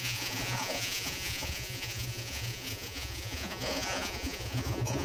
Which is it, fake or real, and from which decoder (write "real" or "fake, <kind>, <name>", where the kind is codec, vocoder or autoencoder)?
fake, vocoder, Vocos